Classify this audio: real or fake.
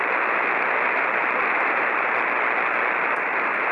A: real